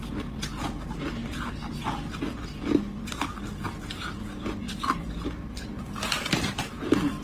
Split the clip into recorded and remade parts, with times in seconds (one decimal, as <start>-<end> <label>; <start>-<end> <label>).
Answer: 0.0-7.2 recorded